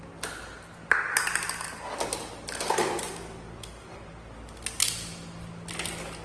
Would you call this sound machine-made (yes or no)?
no